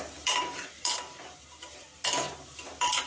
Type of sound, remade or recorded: remade